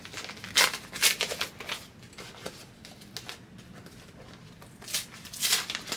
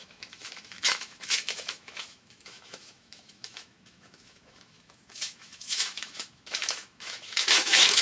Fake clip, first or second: second